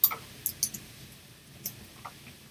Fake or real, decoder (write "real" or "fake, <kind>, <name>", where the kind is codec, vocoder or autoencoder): real